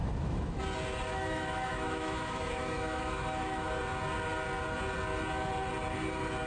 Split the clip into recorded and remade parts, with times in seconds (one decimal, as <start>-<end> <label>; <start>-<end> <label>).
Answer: 0.0-0.6 remade; 0.6-1.1 recorded; 1.1-3.7 remade; 3.7-6.5 recorded